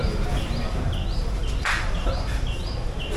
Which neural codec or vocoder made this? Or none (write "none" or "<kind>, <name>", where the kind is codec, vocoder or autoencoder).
vocoder, BigVGAN v2